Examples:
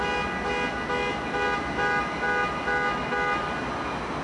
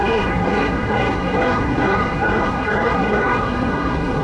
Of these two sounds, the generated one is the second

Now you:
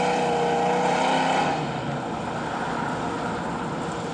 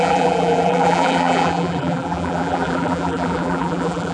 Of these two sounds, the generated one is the second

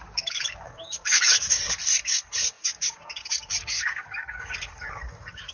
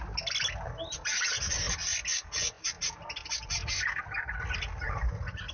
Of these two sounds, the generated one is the first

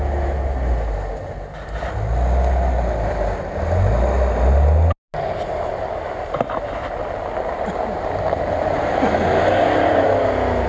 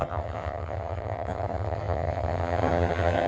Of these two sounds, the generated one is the second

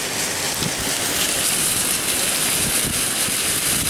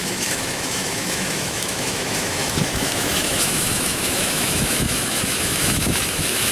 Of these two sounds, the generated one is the second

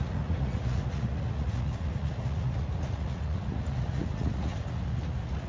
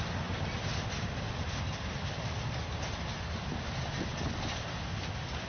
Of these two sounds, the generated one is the first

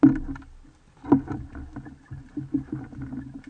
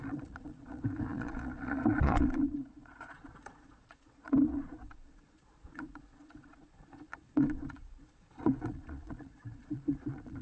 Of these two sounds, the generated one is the second